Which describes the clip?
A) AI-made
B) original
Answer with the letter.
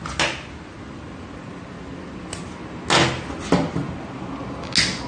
B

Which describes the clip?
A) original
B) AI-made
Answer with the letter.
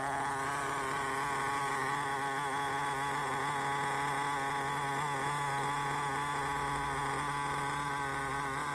A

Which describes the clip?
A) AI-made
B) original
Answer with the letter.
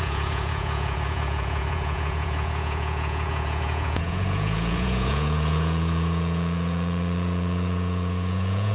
A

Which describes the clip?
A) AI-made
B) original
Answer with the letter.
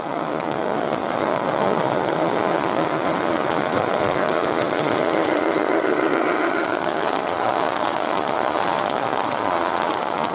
A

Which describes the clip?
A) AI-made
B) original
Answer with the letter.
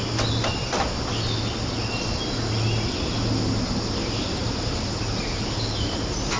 B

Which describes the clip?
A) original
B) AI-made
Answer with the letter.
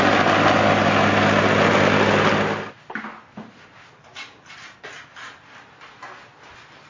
A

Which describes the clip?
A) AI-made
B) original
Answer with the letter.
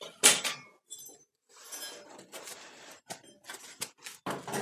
B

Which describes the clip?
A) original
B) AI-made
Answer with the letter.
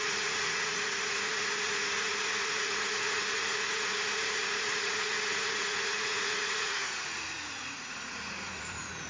B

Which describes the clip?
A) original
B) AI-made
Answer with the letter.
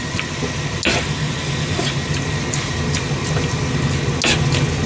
A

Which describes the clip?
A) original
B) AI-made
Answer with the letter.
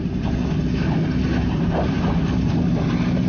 A